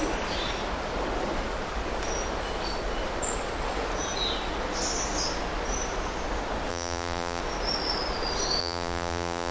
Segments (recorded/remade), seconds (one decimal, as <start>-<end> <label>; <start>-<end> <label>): 0.0-6.7 recorded; 6.7-7.4 remade; 7.4-8.6 recorded; 8.6-9.5 remade